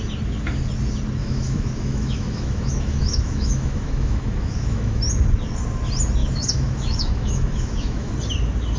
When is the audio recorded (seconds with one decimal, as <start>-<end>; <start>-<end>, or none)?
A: 0.0-1.2; 5.0-6.2; 8.1-8.8

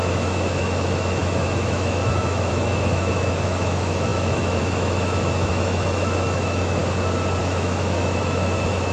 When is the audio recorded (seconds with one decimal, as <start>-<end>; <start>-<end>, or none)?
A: 6.8-7.4

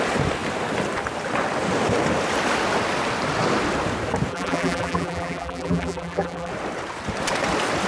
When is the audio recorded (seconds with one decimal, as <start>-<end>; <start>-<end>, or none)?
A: 0.0-4.3; 6.5-7.9

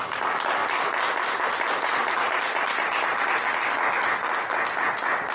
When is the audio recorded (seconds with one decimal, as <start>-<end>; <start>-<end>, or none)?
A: 0.0-5.3

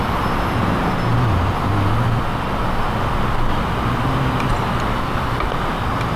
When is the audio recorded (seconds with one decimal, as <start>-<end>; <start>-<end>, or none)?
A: 0.0-6.2